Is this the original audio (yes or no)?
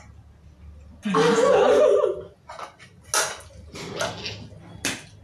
yes